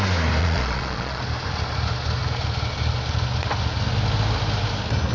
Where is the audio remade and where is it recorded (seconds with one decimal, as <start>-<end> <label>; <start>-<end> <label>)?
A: 0.0-0.4 recorded; 0.4-1.2 remade; 1.2-5.1 recorded